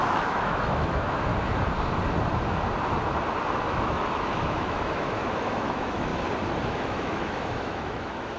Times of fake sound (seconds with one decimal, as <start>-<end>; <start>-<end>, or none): 0.0-1.3; 3.6-6.1; 6.6-8.4